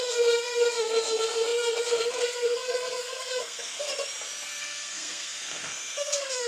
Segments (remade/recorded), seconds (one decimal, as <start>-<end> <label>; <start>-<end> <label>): 0.0-3.9 remade; 3.9-4.6 recorded; 4.6-6.5 remade